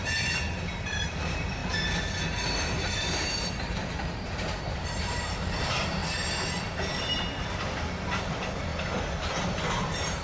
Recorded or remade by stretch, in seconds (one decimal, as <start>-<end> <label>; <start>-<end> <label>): 0.0-1.6 remade; 1.6-2.9 recorded; 2.9-6.0 remade; 6.0-6.6 recorded; 6.6-8.7 remade; 8.7-9.4 recorded; 9.4-10.2 remade